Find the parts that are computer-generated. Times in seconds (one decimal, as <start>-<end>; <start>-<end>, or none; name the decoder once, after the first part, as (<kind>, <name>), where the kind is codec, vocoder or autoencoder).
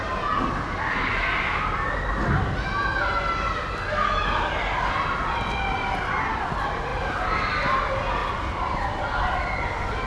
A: none